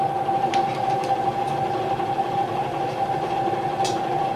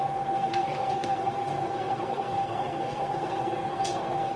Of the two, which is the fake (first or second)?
second